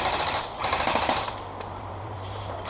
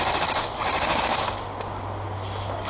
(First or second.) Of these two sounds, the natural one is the second